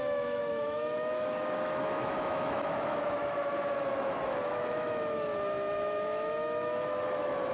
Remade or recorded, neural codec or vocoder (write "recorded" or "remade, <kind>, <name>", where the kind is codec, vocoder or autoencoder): remade, autoencoder, DAC-VAE